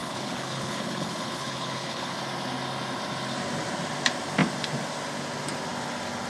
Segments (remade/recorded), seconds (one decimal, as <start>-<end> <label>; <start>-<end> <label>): 0.0-2.2 remade; 2.2-6.3 recorded